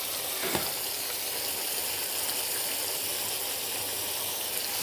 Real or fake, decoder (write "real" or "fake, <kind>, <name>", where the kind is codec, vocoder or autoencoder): real